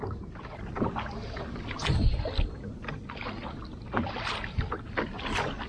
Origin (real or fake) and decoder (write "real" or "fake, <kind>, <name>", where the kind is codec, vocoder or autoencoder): real